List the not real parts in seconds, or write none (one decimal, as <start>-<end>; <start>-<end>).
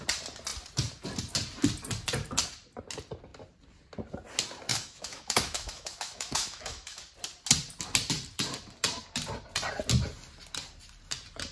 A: 4.7-7.0